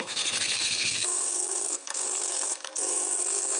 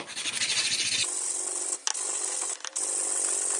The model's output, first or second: first